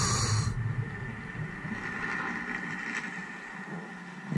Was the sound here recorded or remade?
recorded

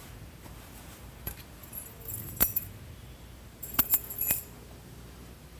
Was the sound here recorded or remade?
remade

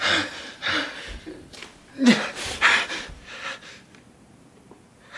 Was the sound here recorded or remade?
remade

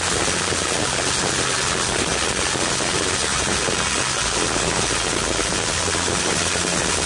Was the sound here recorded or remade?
recorded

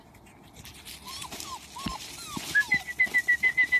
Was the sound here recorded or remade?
recorded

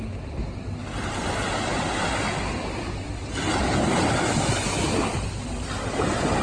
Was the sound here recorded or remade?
recorded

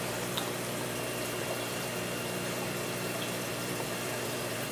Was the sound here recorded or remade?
remade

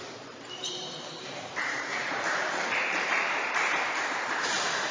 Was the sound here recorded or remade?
remade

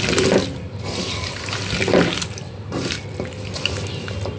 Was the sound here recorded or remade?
recorded